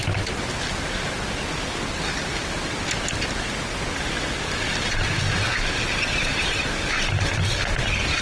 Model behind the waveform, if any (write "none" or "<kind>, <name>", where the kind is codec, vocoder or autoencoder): none